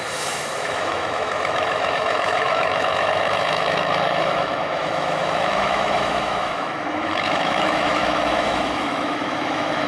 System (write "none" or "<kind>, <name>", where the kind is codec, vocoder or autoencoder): autoencoder, DAC-VAE